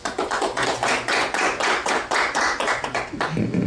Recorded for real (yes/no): no